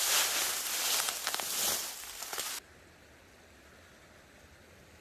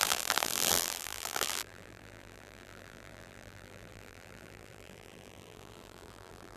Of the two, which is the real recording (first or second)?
first